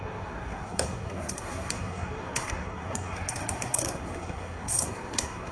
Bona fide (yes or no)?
no